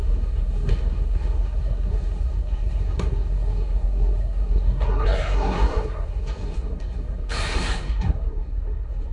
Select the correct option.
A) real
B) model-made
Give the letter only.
B